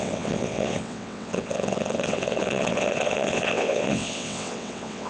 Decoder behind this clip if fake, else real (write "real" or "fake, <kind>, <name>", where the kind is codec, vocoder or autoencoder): fake, vocoder, WaveNeXt